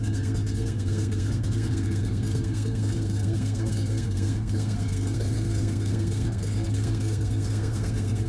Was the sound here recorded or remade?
remade